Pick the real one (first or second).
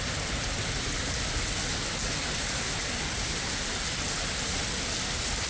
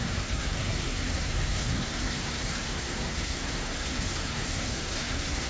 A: first